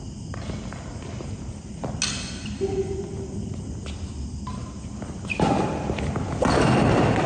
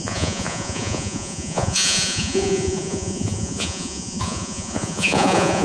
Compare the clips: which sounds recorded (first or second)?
first